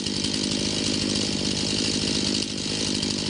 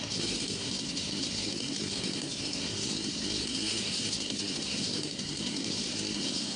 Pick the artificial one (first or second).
second